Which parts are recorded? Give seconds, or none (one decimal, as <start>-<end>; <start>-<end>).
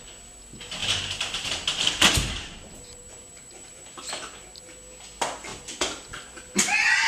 0.0-0.8; 4.0-7.1